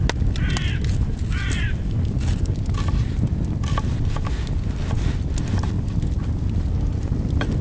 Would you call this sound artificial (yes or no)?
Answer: no